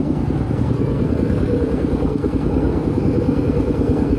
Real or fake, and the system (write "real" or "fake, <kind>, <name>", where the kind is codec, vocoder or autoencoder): fake, codec, SNAC